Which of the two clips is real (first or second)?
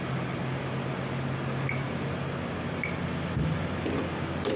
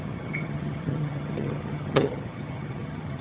first